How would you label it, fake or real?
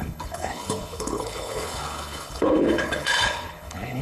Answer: fake